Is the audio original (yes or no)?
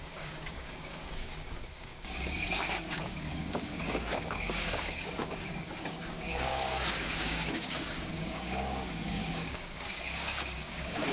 no